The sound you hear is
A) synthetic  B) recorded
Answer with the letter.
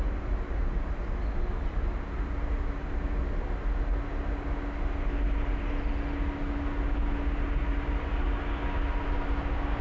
B